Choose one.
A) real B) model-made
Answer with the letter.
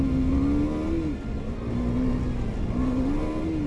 A